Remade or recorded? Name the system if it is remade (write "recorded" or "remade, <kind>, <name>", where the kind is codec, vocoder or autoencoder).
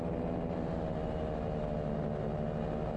recorded